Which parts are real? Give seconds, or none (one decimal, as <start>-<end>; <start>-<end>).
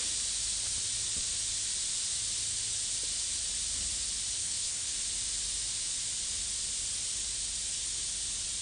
0.0-4.4; 4.9-8.6